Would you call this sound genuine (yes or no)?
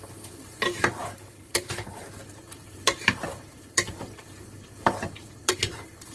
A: no